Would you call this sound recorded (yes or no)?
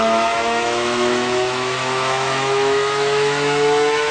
no